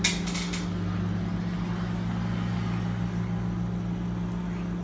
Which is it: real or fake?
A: real